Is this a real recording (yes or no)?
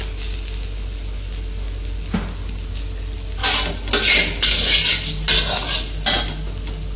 yes